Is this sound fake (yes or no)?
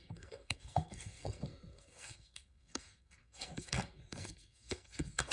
yes